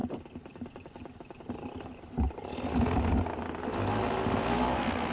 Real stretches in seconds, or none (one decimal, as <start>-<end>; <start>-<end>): 0.0-5.1